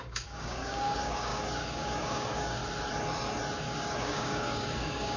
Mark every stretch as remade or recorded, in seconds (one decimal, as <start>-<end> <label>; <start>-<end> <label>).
0.0-2.6 remade; 2.6-3.6 recorded; 3.6-5.2 remade